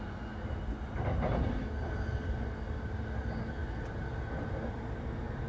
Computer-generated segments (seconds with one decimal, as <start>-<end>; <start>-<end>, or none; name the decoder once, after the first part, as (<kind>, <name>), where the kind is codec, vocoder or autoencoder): none